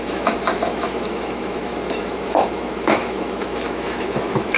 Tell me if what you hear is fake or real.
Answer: fake